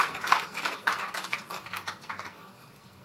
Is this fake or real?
fake